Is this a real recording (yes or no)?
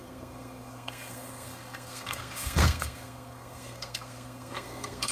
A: no